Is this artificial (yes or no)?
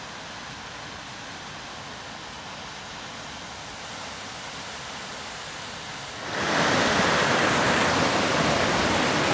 no